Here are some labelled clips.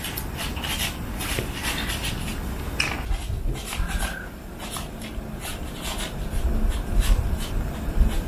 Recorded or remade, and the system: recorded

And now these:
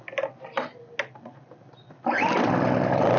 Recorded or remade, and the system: recorded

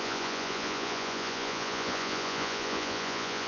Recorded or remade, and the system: remade, vocoder, Vocos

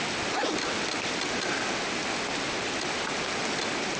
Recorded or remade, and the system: recorded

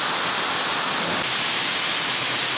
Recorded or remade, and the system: recorded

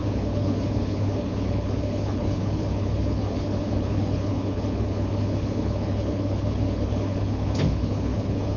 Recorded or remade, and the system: remade, codec, HILCodec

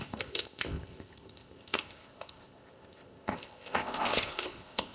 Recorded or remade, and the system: remade, codec, ZipCodec